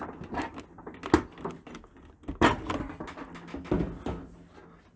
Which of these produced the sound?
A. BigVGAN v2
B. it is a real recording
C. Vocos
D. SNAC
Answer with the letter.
B